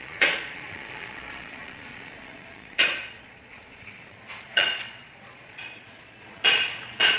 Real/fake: fake